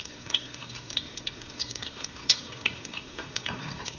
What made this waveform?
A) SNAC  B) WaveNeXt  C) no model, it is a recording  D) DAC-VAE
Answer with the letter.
A